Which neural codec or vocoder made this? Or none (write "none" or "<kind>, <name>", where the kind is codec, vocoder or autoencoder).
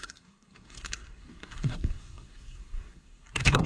codec, SNAC